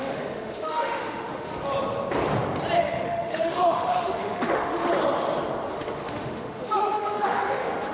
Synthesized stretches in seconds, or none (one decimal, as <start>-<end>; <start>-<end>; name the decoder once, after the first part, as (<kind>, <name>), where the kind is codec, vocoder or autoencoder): 0.0-1.5 (autoencoder, DAC-VAE); 2.8-4.9; 5.7-7.9